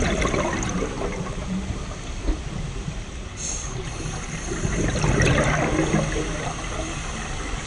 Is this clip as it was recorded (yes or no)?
yes